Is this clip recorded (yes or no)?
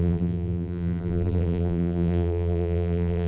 no